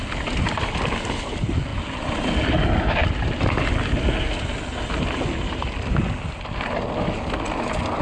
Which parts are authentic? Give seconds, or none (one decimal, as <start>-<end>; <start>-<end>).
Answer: 0.0-8.0